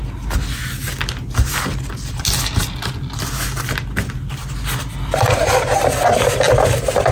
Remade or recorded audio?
recorded